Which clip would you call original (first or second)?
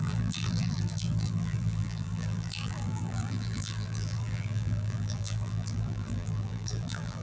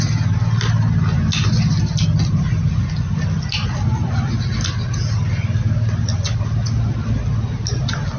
second